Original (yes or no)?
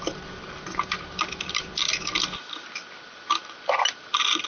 yes